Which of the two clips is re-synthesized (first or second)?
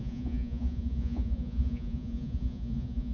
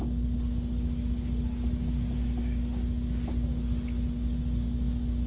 first